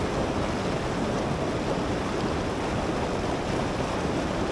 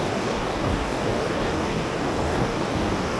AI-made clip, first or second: second